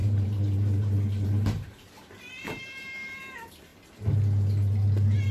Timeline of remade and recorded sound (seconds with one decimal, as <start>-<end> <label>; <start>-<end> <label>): 0.0-3.2 remade; 3.2-5.3 recorded